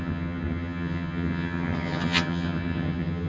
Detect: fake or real fake